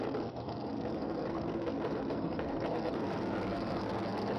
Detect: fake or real fake